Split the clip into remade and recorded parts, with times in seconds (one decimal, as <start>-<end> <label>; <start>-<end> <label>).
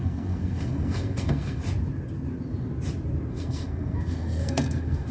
0.0-1.6 remade; 1.6-3.3 recorded; 3.3-5.1 remade